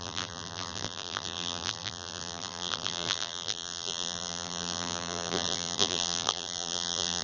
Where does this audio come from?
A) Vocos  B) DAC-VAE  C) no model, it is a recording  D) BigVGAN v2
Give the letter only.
D